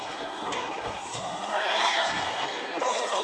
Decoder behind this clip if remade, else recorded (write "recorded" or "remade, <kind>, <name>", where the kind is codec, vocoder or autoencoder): remade, codec, SNAC